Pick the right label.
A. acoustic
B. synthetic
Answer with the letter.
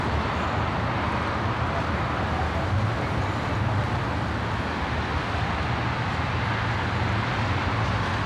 A